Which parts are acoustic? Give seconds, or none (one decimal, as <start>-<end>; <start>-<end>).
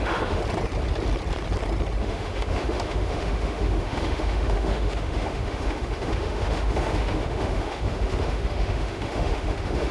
0.4-2.0